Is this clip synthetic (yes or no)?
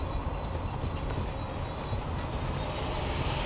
no